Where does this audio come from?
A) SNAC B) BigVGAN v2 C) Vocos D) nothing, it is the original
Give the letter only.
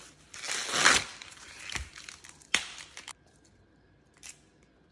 B